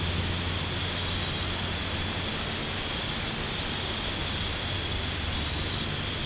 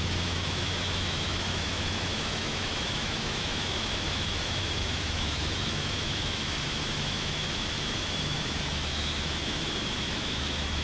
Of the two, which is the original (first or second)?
first